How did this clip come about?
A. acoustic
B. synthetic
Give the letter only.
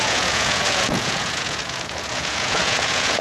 B